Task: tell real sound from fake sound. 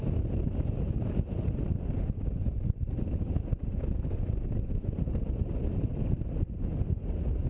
real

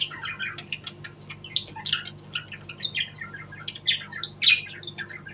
real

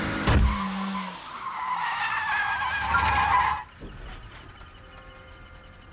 real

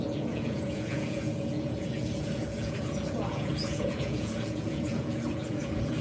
fake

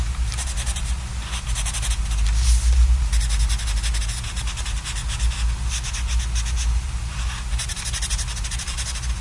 real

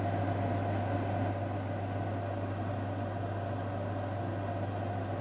real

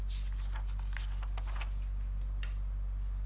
real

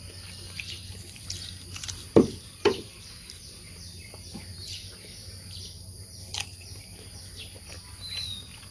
real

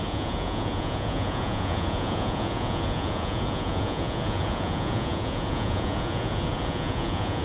fake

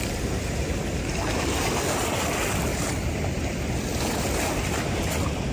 real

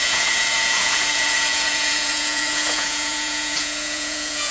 fake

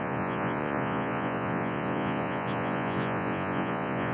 fake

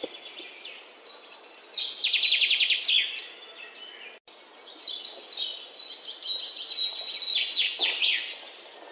real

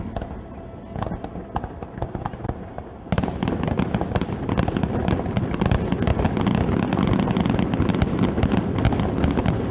real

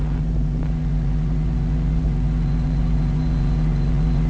fake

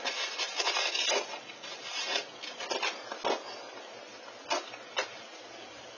real